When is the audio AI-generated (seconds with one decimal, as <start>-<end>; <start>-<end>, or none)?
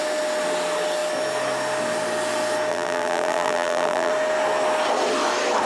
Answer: 2.7-4.1